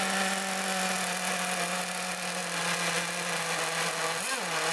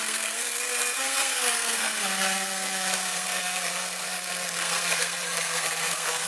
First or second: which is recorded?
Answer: first